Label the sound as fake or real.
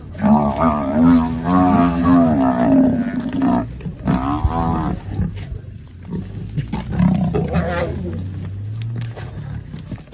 real